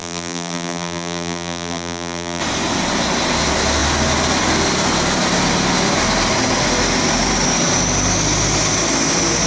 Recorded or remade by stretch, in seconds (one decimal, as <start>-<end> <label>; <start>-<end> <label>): 0.0-2.4 remade; 2.4-9.5 recorded